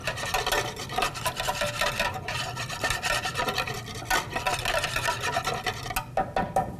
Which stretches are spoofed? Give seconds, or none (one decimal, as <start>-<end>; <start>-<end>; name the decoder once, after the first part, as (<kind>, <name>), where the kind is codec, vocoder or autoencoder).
none